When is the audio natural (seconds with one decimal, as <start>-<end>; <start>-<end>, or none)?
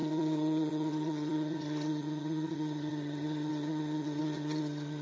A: none